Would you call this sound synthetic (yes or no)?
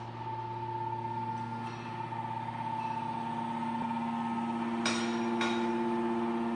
no